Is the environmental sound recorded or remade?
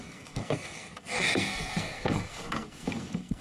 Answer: remade